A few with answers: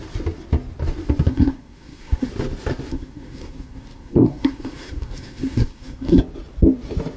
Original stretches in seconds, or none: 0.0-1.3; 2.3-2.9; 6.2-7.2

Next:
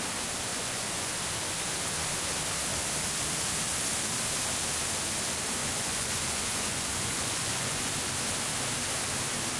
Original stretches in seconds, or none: 0.0-0.5; 1.1-5.6; 7.9-9.6

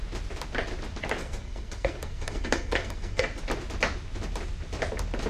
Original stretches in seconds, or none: 0.0-1.2; 3.4-5.3